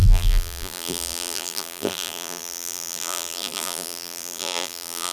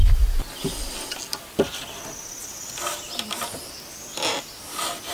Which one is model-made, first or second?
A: first